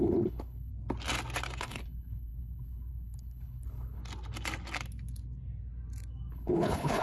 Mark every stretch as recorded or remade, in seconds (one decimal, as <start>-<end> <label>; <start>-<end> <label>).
0.0-0.7 remade; 0.7-1.6 recorded; 1.6-4.0 remade; 4.0-6.3 recorded; 6.3-7.0 remade

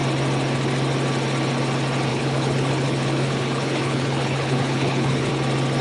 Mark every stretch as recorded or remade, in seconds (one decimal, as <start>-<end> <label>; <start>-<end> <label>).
0.0-2.1 recorded; 2.1-5.3 remade; 5.3-5.8 recorded

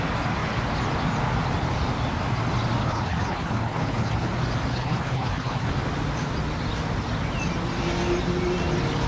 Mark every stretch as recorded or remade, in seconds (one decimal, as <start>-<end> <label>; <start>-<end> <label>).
0.0-2.8 recorded; 2.8-4.3 remade; 4.3-4.7 recorded; 4.7-5.7 remade; 5.7-9.1 recorded

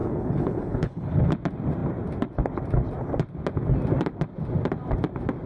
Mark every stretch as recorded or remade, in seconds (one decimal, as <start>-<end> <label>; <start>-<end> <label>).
0.0-1.3 remade; 1.3-5.5 recorded

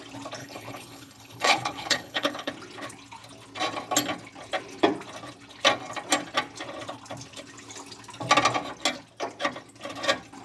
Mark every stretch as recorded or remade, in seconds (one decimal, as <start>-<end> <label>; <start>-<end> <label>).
0.0-0.4 recorded; 0.4-2.5 remade; 2.5-10.4 recorded